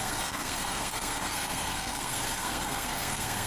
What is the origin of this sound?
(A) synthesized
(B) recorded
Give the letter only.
A